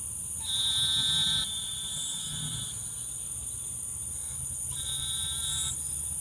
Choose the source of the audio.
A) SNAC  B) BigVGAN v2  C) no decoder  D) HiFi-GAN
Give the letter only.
B